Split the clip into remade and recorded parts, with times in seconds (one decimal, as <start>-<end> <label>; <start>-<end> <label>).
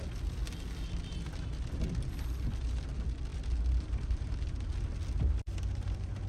0.0-3.3 recorded; 3.3-4.3 remade; 4.3-6.3 recorded